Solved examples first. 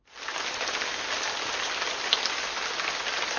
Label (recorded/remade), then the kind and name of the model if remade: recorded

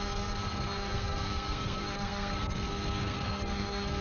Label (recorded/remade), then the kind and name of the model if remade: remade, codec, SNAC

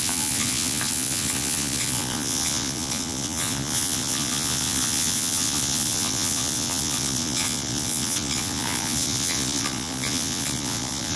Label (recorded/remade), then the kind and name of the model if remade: remade, vocoder, Vocos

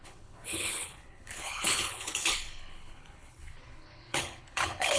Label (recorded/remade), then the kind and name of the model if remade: remade, codec, HILCodec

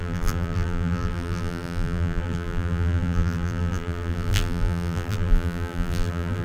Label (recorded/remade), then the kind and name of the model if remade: remade, vocoder, BigVGAN v2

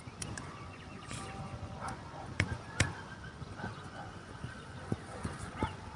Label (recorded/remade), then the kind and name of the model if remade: remade, vocoder, Vocos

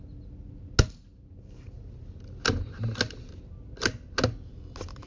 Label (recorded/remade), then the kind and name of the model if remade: recorded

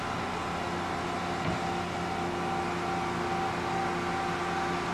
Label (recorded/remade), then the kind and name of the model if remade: recorded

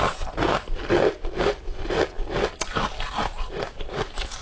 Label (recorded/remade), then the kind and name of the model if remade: recorded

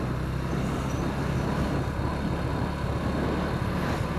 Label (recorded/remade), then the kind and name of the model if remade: recorded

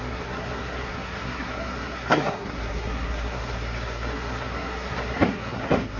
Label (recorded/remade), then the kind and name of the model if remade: remade, codec, SNAC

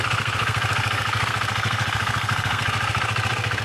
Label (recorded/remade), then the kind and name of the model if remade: remade, codec, SNAC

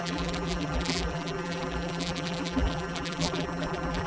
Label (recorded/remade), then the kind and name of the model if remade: remade, vocoder, BigVGAN v2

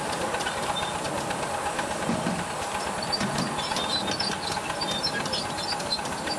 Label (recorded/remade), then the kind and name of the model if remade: recorded